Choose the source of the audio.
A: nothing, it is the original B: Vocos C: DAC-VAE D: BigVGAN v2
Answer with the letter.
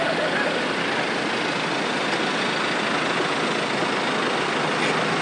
A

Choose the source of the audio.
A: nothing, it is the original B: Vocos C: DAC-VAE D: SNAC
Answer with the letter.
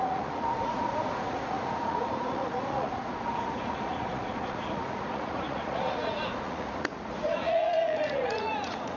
B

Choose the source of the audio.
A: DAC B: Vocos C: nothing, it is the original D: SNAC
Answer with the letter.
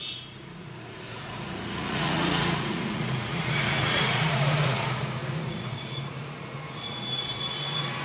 B